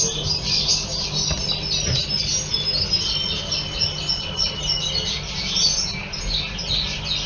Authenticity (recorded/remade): recorded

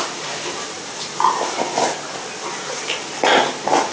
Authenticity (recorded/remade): recorded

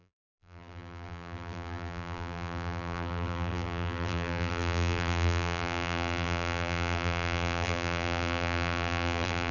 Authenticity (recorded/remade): remade